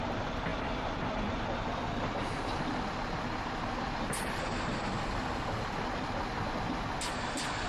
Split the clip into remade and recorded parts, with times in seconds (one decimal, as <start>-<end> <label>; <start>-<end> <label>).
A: 0.0-7.7 recorded